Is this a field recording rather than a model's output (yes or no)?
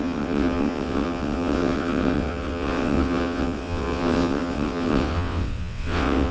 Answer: no